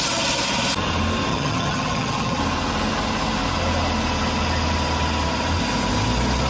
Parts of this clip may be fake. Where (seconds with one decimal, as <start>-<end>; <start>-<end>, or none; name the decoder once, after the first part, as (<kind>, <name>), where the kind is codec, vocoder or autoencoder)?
1.3-2.4 (vocoder, HiFi-GAN)